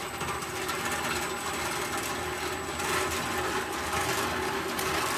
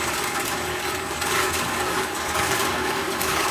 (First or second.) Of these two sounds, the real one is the first